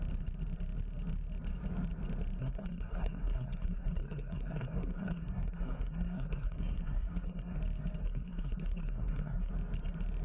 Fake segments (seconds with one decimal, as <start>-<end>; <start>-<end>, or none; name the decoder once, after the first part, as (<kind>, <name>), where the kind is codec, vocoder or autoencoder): 2.4-7.6 (codec, SNAC); 8.0-9.5